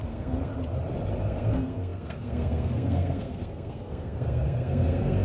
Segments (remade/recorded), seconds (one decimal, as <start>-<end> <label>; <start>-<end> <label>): 0.0-0.5 remade; 0.5-1.2 recorded; 1.2-5.2 remade